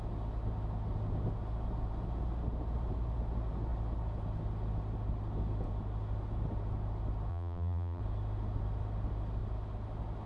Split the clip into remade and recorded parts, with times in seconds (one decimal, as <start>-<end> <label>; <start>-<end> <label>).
0.0-7.3 recorded; 7.3-8.0 remade; 8.0-10.3 recorded